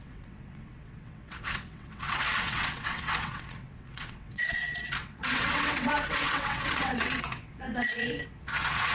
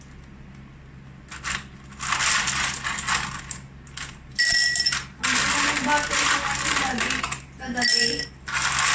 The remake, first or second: first